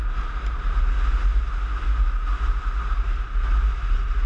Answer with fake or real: real